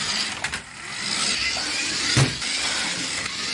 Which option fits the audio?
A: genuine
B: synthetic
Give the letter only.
A